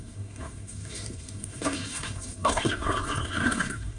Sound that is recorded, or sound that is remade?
remade